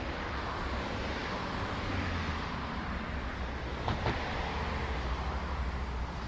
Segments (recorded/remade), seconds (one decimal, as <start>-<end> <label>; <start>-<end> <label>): 0.0-6.3 recorded